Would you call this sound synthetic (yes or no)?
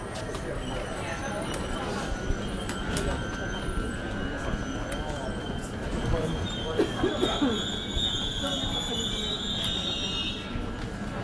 no